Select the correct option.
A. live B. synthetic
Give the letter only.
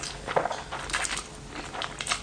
A